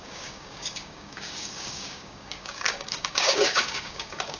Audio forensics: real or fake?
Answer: fake